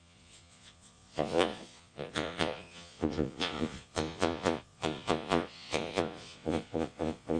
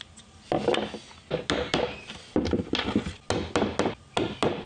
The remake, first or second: first